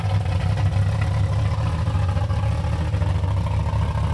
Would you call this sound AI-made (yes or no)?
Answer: no